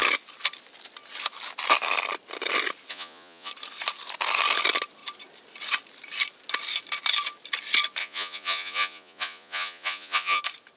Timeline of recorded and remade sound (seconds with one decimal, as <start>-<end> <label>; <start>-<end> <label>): 0.0-2.9 recorded; 2.9-3.5 remade; 3.5-8.0 recorded; 8.0-10.4 remade; 10.4-10.8 recorded